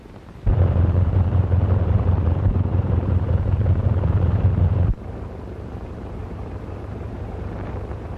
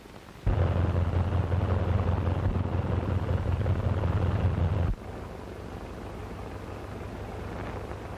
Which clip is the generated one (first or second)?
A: first